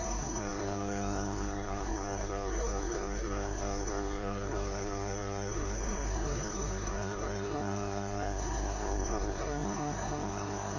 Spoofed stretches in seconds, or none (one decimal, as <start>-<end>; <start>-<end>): 0.0-10.8